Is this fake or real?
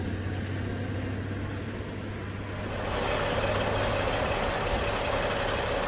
real